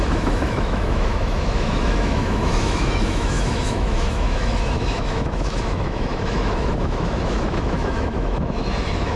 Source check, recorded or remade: remade